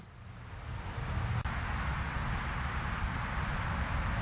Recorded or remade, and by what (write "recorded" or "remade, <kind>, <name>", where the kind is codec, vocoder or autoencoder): recorded